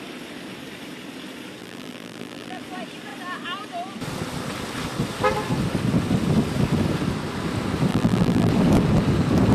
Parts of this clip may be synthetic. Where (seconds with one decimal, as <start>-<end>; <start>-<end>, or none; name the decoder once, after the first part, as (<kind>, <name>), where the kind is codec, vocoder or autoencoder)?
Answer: 1.6-2.6 (vocoder, BigVGAN v2); 7.9-8.5